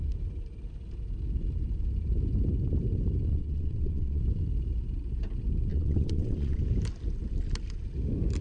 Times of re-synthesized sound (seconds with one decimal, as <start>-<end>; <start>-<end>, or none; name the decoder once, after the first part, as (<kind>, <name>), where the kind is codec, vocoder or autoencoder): 3.3-4.2 (vocoder, WaveNeXt); 5.7-6.6